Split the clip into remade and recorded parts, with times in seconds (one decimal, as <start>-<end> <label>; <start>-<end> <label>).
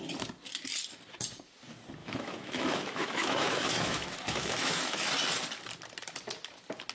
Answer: 0.0-2.0 recorded; 2.0-5.1 remade; 5.1-6.9 recorded